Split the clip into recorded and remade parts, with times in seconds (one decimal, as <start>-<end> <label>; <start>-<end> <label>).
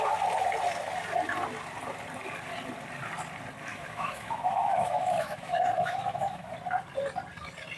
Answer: 0.0-3.7 recorded; 3.7-6.5 remade; 6.5-7.8 recorded